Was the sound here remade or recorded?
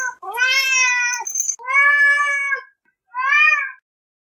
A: recorded